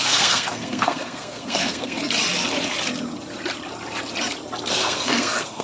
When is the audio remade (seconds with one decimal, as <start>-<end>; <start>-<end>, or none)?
0.0-2.0; 4.7-5.6